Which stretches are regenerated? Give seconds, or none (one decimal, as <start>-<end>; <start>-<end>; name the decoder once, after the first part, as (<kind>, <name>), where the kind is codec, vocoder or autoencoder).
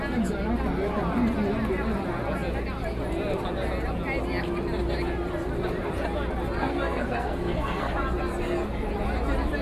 6.6-7.9 (codec, SNAC)